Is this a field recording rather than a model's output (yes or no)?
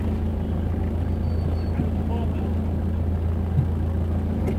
yes